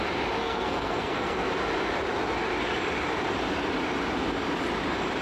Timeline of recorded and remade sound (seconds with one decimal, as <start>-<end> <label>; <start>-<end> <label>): 0.0-0.4 recorded; 0.4-1.5 remade; 1.5-5.2 recorded